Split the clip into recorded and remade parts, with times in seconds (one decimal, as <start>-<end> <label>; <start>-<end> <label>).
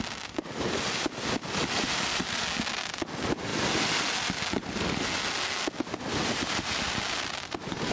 0.0-7.9 recorded